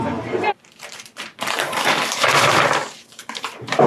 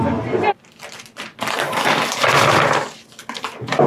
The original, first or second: second